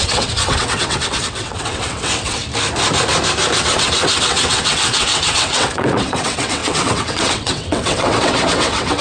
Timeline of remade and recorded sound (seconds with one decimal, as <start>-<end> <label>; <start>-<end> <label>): 0.0-2.4 remade; 2.4-3.6 recorded; 3.6-9.0 remade